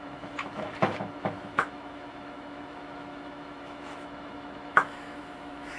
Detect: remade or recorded remade